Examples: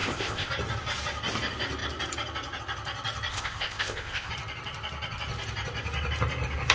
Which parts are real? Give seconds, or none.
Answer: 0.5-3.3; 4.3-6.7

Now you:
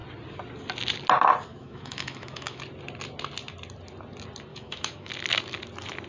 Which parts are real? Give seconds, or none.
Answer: 0.0-1.5; 2.6-4.5; 5.1-6.1

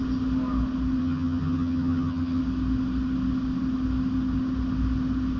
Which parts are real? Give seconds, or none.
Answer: 0.0-1.0; 2.4-5.4

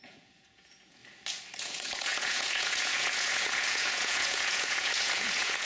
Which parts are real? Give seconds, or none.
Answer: 1.0-1.6